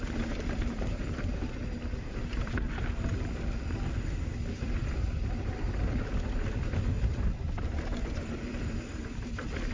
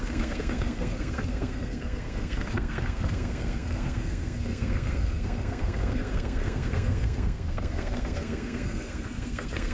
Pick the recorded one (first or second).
first